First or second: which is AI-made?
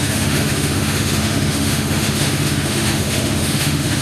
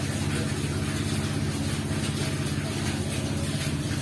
first